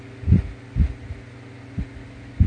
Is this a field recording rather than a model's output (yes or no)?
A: yes